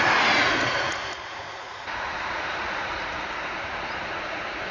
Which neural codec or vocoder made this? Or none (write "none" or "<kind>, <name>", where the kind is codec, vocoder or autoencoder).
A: vocoder, Vocos